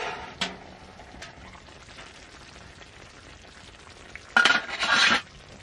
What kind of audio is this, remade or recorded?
recorded